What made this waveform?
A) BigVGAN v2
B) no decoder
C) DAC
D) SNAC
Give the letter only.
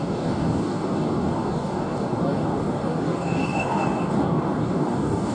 C